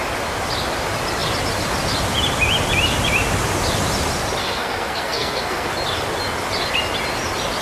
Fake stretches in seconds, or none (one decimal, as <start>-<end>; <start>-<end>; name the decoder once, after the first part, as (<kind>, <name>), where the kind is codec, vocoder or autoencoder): 4.4-5.7 (codec, SNAC)

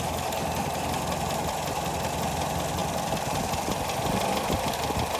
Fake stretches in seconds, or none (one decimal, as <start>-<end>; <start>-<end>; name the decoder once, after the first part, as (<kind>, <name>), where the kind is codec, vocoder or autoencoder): none